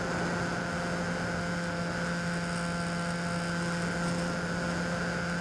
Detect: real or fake real